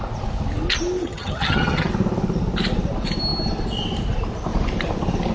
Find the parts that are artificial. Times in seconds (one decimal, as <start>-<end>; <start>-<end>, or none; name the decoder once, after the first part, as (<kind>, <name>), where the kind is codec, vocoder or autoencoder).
1.0-1.9 (vocoder, HiFi-GAN)